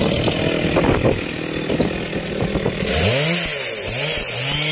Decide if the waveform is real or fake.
real